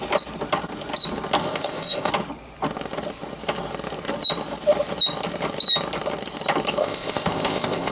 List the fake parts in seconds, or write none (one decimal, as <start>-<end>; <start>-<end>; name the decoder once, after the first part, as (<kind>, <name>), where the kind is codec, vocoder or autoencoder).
1.4-2.1 (codec, ZipCodec); 6.8-7.9

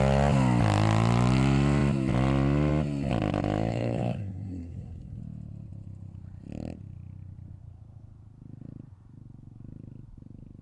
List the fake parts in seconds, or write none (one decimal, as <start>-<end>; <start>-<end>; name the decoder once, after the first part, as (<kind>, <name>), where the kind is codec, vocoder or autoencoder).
3.7-5.2 (codec, SNAC)